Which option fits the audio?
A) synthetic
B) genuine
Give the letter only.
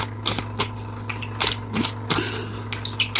B